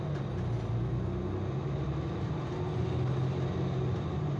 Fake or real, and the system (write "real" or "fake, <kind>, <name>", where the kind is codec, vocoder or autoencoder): real